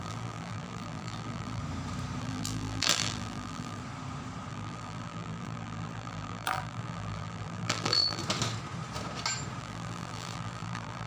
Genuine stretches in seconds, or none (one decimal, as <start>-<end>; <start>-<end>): 1.6-2.2; 3.8-4.5; 8.2-9.6